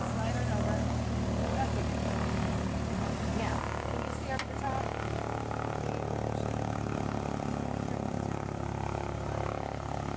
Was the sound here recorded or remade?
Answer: recorded